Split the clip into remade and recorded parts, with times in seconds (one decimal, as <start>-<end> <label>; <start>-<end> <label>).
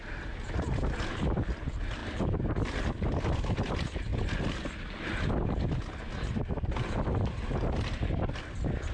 0.0-8.9 recorded